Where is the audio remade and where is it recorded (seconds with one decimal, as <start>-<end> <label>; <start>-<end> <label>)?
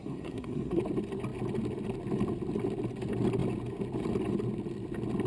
0.0-0.8 remade; 0.8-5.3 recorded